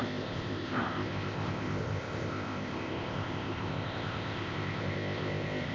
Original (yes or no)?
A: no